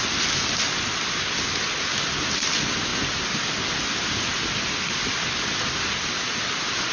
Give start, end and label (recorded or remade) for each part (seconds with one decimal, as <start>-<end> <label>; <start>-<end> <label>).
0.0-6.9 recorded